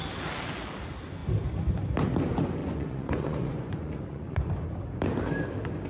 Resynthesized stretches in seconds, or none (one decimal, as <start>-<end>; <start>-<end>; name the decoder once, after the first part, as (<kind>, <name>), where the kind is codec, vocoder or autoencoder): 2.6-4.5 (vocoder, Vocos)